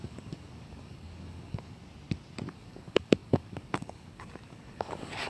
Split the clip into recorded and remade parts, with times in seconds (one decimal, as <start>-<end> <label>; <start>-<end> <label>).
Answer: 0.0-1.8 remade; 1.8-2.5 recorded; 2.5-5.3 remade